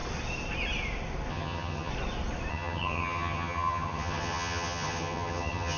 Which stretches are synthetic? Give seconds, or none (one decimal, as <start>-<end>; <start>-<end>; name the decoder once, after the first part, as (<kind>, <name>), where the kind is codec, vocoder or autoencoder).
1.3-1.9 (vocoder, HiFi-GAN); 2.5-5.8